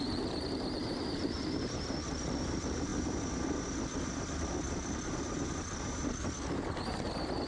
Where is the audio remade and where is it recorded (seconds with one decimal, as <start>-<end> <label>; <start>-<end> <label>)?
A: 0.0-2.9 remade; 2.9-7.5 recorded